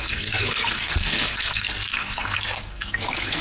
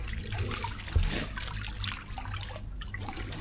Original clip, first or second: second